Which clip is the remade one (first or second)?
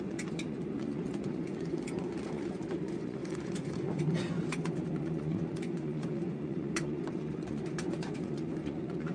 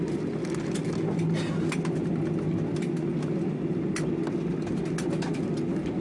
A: first